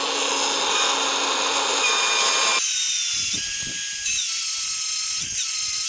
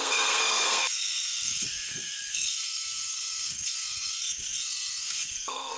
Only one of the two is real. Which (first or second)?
first